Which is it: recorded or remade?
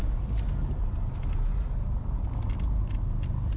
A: recorded